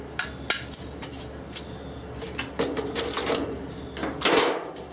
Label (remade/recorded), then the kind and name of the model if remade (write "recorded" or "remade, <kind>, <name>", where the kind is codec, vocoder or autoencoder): recorded